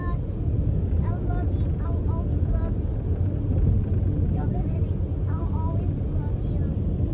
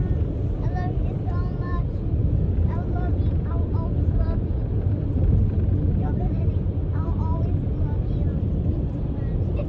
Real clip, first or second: first